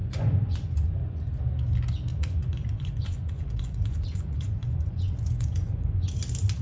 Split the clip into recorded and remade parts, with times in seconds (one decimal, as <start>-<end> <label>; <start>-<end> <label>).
0.0-1.3 remade; 1.3-2.1 recorded; 2.1-6.1 remade; 6.1-6.6 recorded